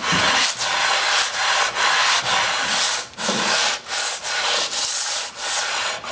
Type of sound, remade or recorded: recorded